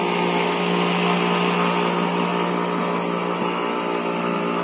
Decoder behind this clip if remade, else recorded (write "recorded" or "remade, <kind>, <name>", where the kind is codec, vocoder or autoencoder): recorded